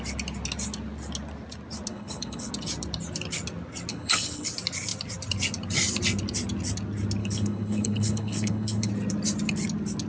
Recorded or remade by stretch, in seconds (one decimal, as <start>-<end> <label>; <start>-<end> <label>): 0.0-1.9 recorded; 1.9-2.5 remade; 2.5-3.9 recorded; 3.9-4.5 remade; 4.5-7.2 recorded; 7.2-8.9 remade; 8.9-10.1 recorded

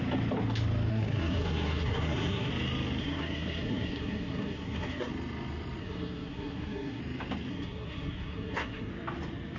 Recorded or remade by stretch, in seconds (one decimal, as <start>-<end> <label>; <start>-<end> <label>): 0.0-0.9 recorded; 0.9-2.5 remade; 2.5-3.0 recorded; 3.0-5.1 remade; 5.1-5.8 recorded; 5.8-7.0 remade; 7.0-7.5 recorded; 7.5-8.9 remade; 8.9-9.6 recorded